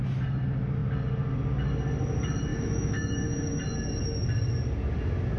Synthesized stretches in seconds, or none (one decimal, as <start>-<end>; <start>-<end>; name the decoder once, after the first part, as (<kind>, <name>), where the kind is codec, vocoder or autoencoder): 2.5-3.6 (autoencoder, DAC-VAE)